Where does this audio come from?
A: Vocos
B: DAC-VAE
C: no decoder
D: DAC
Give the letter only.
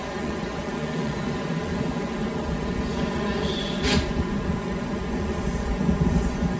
A